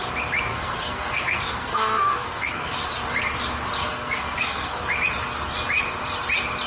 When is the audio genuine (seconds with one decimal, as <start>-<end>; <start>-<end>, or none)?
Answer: 0.0-0.5; 2.9-3.8; 4.8-6.7